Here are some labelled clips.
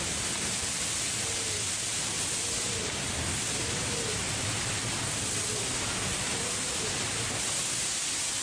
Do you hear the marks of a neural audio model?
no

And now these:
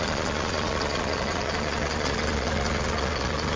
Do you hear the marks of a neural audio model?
yes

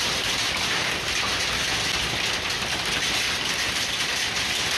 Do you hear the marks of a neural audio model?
no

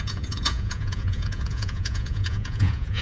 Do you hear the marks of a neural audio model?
yes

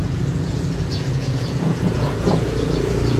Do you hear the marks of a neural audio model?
yes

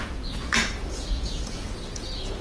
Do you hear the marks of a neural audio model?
yes